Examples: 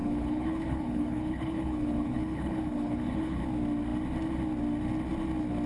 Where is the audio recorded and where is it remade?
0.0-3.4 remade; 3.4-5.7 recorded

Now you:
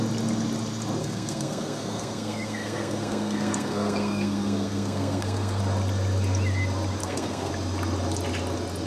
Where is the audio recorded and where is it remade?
0.0-1.0 recorded; 1.0-5.6 remade; 5.6-7.0 recorded; 7.0-7.5 remade; 7.5-8.9 recorded

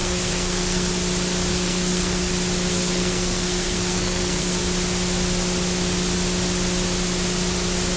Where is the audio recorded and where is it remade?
0.0-0.9 remade; 0.9-1.5 recorded; 1.5-2.3 remade; 2.3-2.7 recorded; 2.7-4.6 remade; 4.6-8.0 recorded

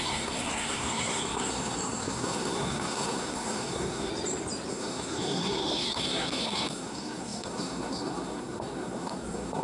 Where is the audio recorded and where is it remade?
0.0-4.1 remade; 4.1-4.7 recorded; 4.7-9.6 remade

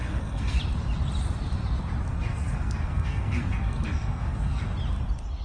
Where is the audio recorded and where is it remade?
0.0-0.6 remade; 0.6-2.1 recorded; 2.1-4.6 remade; 4.6-5.4 recorded